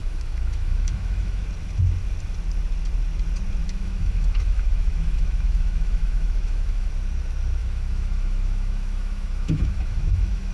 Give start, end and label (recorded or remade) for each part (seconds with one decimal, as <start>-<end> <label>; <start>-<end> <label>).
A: 0.0-1.4 remade; 1.4-3.6 recorded; 3.6-6.9 remade; 6.9-7.6 recorded; 7.6-10.5 remade